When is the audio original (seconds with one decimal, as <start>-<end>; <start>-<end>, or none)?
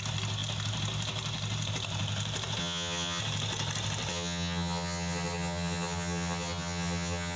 0.0-2.6; 3.2-4.1